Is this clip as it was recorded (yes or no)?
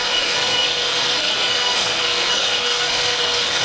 no